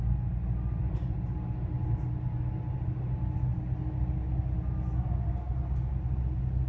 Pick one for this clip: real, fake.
real